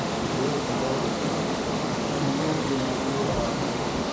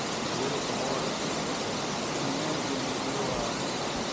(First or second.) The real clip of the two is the second